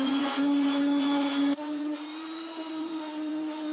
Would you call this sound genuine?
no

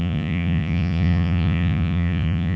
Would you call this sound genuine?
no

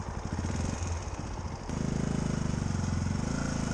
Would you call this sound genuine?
yes